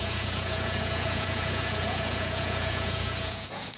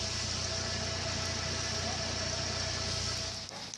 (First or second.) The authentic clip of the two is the second